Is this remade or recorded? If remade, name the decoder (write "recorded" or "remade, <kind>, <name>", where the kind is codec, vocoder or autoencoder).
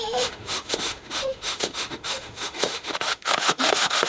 remade, autoencoder, DAC-VAE